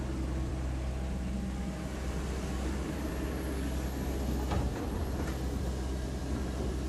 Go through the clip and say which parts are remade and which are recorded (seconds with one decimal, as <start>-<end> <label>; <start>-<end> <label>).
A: 0.0-6.9 recorded